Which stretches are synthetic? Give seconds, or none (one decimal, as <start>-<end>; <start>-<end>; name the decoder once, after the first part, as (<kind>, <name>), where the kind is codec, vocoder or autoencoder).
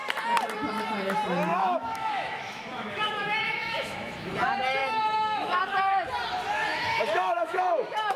1.5-4.3 (autoencoder, DAC-VAE); 4.8-5.6; 6.7-8.2